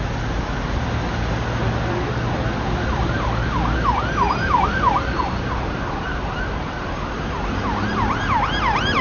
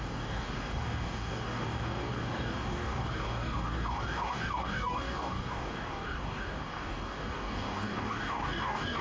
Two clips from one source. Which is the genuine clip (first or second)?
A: first